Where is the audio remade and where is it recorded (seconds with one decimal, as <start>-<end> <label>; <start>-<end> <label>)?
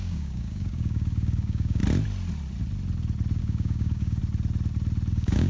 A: 0.0-1.8 remade; 1.8-3.4 recorded; 3.4-4.2 remade; 4.2-5.1 recorded; 5.1-5.5 remade